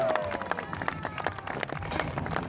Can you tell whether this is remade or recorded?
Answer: recorded